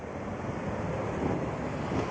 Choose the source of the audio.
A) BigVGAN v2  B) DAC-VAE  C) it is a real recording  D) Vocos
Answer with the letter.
C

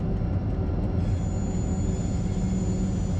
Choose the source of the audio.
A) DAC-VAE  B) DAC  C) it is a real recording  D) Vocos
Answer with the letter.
C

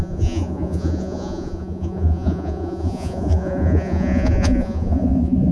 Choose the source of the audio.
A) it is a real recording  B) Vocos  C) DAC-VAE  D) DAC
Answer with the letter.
B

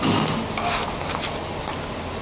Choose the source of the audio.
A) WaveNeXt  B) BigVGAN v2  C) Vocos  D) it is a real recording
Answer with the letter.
D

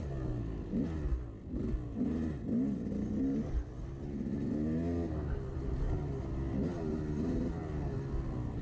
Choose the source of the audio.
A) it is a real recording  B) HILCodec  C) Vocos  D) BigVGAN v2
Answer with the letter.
A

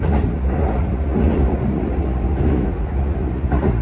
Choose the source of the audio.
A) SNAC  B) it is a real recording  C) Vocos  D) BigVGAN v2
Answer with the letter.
C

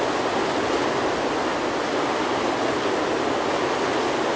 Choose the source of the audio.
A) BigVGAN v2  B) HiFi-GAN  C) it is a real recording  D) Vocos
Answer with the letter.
C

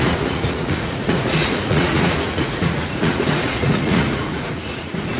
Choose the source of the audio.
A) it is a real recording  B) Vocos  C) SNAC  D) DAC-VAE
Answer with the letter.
B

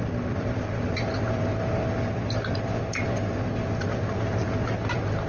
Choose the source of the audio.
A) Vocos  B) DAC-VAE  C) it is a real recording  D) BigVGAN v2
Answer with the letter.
C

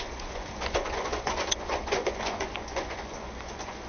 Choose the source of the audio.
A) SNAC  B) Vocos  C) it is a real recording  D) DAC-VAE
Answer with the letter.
B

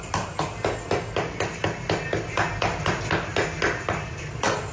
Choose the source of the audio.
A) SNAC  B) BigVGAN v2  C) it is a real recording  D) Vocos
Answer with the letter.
C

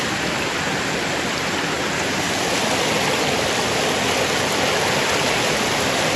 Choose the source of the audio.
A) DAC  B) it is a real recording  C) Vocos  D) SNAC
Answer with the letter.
B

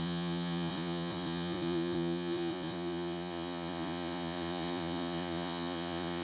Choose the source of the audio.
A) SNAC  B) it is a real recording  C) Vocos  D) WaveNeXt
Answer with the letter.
C